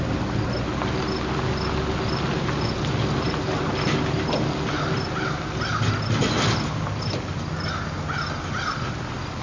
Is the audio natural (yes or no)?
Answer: yes